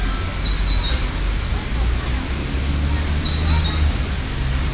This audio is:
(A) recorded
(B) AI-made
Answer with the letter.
A